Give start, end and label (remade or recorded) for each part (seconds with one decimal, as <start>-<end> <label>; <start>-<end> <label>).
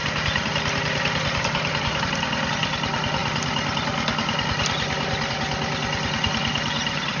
0.0-7.2 recorded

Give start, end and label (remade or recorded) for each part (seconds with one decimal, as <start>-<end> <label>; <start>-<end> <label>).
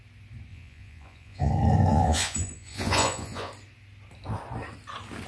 0.0-0.5 recorded; 0.5-1.5 remade; 1.5-1.9 recorded; 1.9-3.5 remade; 3.5-5.3 recorded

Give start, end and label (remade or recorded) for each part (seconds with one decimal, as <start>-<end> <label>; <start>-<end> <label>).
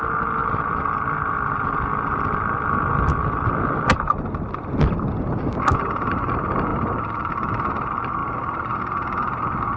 0.0-9.8 recorded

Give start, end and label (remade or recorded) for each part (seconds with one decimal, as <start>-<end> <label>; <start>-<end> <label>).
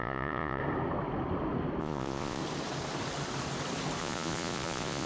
0.0-0.6 remade; 0.6-1.8 recorded; 1.8-2.4 remade; 2.4-4.0 recorded; 4.0-5.1 remade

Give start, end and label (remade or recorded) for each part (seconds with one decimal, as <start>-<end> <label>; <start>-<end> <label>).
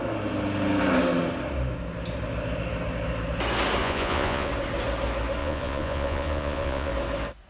0.0-3.8 recorded; 3.8-4.5 remade; 4.5-5.4 recorded; 5.4-6.9 remade; 6.9-7.5 recorded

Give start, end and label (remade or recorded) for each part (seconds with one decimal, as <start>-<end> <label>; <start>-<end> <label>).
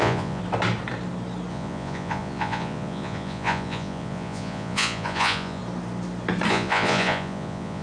0.0-0.4 remade; 0.4-1.5 recorded; 1.5-5.6 remade; 5.6-6.5 recorded; 6.5-7.8 remade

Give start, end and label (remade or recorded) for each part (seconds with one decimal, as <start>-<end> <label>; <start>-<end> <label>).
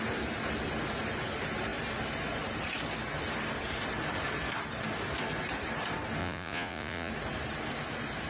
0.0-6.2 recorded; 6.2-7.1 remade; 7.1-8.3 recorded